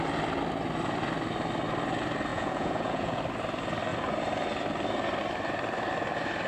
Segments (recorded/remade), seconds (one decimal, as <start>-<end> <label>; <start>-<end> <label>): 0.0-2.3 recorded; 2.3-3.2 remade; 3.2-6.5 recorded